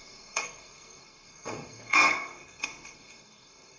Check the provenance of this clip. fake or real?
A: fake